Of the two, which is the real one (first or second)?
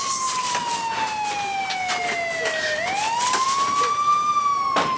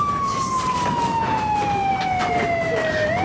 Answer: first